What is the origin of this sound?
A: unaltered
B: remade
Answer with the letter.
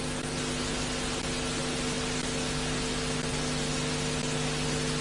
A